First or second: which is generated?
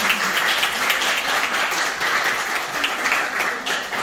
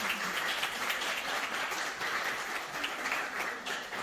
second